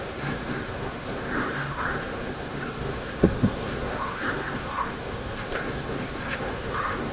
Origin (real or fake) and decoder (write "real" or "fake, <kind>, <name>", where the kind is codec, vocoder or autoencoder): fake, codec, SNAC